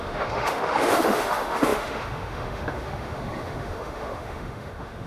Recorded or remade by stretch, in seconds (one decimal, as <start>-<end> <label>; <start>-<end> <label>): 0.0-5.1 remade